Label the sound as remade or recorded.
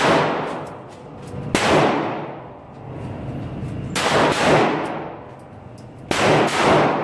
recorded